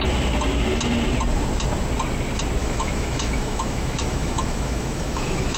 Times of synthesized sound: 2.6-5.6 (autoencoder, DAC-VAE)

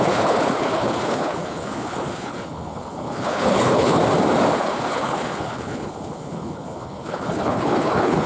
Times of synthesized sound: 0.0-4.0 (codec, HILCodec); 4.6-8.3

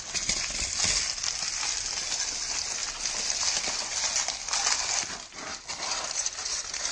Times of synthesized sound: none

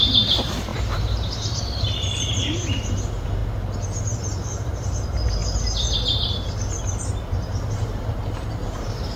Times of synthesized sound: 0.0-3.4 (vocoder, BigVGAN v2); 4.0-5.4; 7.3-9.2

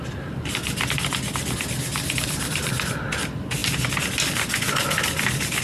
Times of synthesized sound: 1.9-2.7 (vocoder, BigVGAN v2)

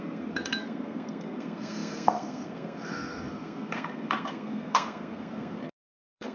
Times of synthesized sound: 0.0-6.3 (codec, SNAC)